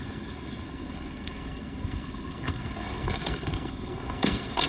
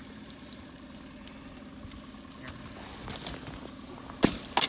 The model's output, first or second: first